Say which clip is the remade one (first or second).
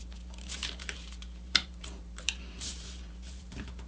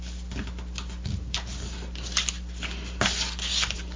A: first